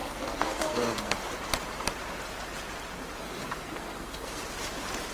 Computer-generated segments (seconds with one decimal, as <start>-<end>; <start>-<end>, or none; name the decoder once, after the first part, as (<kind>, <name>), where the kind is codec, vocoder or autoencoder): 0.0-1.2 (codec, SNAC); 3.2-4.4